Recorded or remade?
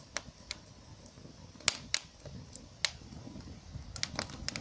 recorded